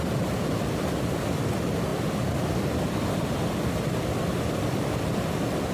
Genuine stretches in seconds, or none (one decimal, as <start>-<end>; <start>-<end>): 0.0-5.7

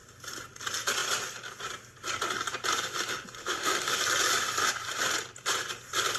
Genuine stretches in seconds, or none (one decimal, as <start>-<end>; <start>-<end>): 0.0-3.4; 4.0-6.2

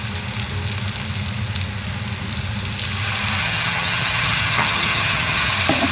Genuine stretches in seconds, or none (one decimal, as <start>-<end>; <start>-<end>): 0.0-3.4; 5.5-5.9

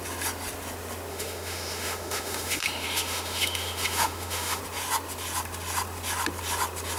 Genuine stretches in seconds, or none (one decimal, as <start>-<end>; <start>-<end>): 0.0-1.1; 4.6-7.0

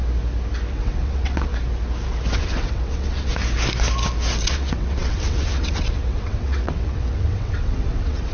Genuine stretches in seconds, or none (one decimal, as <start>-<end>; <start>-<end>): 0.0-0.7; 1.5-2.3; 3.3-4.4

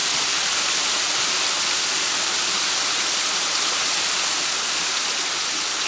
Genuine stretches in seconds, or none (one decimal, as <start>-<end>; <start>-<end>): 0.0-5.9

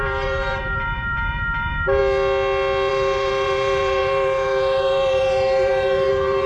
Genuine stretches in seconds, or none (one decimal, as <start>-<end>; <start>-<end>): 2.0-2.9

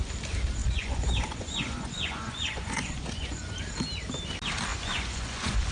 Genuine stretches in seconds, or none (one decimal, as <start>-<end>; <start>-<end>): 0.0-0.6; 3.6-4.7